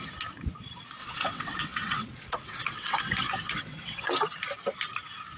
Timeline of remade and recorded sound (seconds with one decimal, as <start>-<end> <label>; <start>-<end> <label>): 0.0-1.0 recorded; 1.0-4.1 remade; 4.1-5.4 recorded